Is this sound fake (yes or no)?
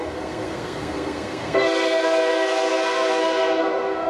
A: yes